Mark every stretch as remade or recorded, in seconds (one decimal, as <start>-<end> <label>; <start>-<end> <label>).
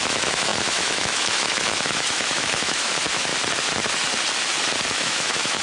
0.0-3.3 remade; 3.3-4.9 recorded; 4.9-5.6 remade